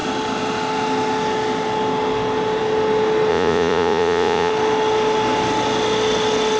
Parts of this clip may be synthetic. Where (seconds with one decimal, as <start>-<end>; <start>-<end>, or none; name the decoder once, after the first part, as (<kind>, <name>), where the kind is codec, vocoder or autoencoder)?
3.3-4.5 (vocoder, Vocos)